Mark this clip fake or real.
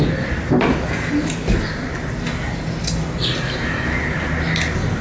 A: real